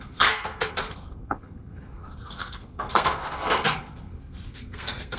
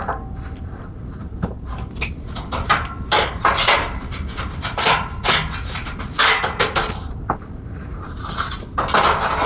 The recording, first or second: second